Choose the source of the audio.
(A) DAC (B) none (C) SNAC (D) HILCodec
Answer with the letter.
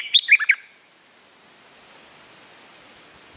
B